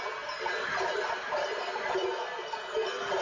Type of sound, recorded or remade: recorded